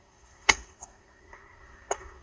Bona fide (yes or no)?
no